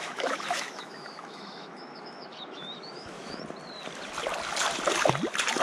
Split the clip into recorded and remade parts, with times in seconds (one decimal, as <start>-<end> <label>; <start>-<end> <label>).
0.0-3.4 remade; 3.4-5.6 recorded